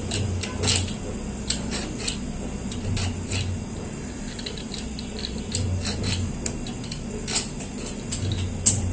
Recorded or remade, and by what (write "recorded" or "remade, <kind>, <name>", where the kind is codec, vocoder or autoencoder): recorded